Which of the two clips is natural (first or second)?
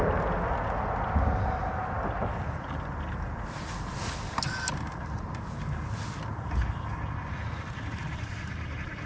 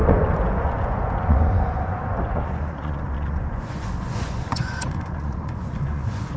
first